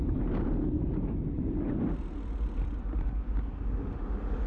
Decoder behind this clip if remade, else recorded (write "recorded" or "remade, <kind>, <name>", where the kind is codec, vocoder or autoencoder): recorded